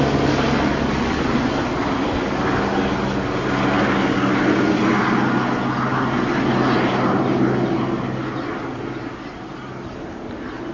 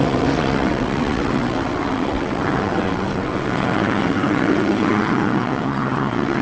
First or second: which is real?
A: first